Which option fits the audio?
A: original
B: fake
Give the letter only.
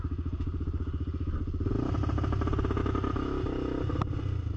A